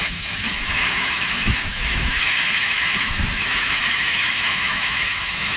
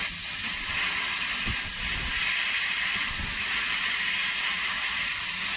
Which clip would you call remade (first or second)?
first